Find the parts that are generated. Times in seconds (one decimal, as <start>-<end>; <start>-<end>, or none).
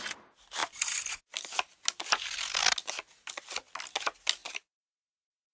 none